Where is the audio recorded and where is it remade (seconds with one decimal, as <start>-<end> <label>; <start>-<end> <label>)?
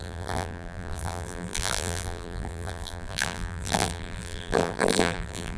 0.0-5.6 remade